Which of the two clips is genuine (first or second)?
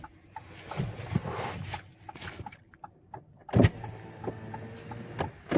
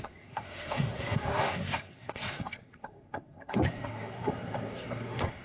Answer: first